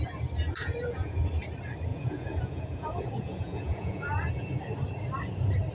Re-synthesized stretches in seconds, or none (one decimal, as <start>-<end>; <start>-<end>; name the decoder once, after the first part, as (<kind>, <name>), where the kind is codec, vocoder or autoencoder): 0.6-1.2 (vocoder, Vocos); 1.9-4.3